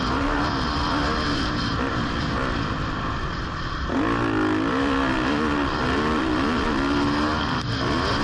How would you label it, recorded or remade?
recorded